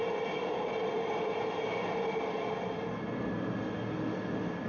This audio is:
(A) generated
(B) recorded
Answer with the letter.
B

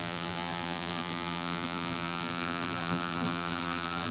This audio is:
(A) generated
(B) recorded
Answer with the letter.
A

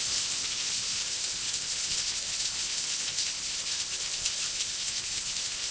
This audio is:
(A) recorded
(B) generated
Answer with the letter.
B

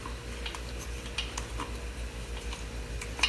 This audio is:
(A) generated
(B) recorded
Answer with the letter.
B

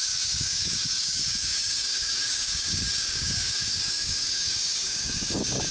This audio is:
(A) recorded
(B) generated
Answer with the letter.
B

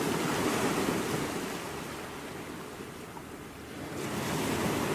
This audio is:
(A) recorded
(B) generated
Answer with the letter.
A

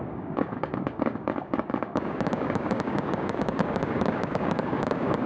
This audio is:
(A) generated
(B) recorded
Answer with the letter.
A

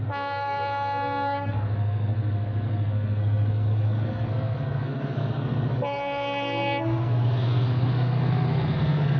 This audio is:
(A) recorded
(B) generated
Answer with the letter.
B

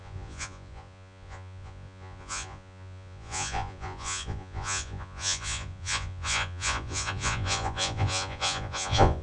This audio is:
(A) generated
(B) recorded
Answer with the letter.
A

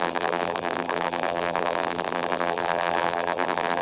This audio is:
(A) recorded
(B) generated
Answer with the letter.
B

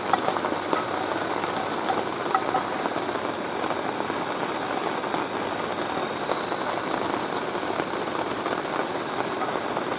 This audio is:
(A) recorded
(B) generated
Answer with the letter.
A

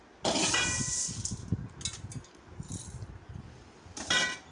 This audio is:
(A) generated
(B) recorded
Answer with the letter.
B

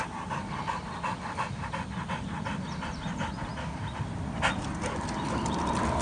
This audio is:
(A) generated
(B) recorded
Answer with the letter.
B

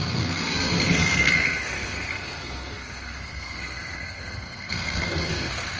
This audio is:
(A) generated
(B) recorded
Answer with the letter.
A